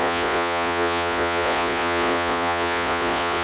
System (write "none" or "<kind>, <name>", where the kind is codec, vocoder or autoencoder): vocoder, Vocos